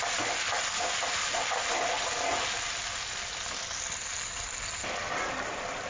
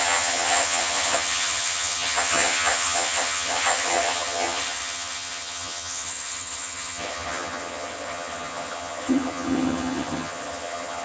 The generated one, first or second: second